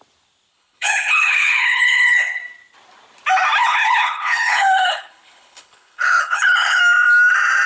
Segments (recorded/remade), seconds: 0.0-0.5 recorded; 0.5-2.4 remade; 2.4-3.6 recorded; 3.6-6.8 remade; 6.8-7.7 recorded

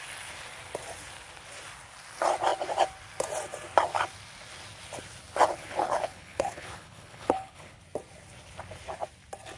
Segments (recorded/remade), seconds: 0.0-5.5 recorded; 5.5-7.8 remade; 7.8-9.6 recorded